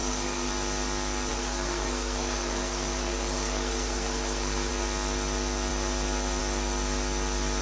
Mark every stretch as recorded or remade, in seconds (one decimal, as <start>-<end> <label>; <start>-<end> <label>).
0.0-0.5 remade; 0.5-1.3 recorded; 1.3-4.7 remade; 4.7-7.6 recorded